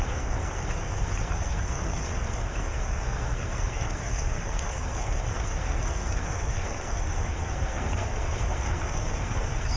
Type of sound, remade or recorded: remade